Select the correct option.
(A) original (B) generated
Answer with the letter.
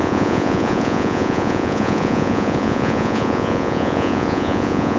B